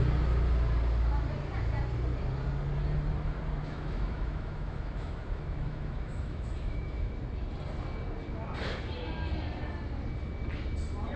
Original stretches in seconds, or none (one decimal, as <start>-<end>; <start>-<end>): 0.0-3.6; 7.1-11.2